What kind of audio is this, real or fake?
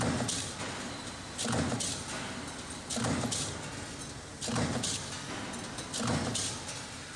real